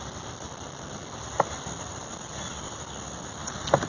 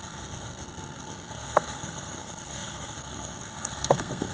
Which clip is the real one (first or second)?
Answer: first